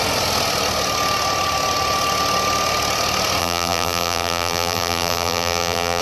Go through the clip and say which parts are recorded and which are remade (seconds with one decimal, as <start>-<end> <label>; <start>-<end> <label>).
0.0-3.4 recorded; 3.4-6.0 remade